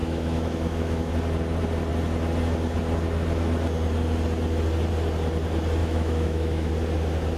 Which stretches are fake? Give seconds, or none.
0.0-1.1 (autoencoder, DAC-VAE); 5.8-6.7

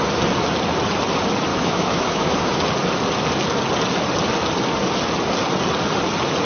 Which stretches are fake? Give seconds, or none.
1.5-2.6 (autoencoder, DAC-VAE)

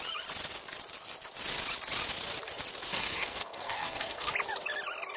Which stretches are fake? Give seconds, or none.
2.9-4.3 (codec, SNAC)